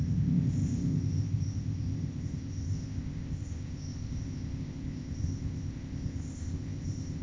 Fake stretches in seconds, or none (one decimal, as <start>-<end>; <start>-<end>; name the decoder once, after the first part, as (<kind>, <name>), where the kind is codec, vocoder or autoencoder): 0.0-7.2 (codec, ZipCodec)